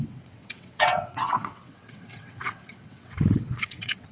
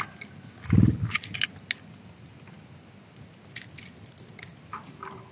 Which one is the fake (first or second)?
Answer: first